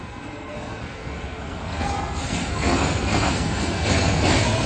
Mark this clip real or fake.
fake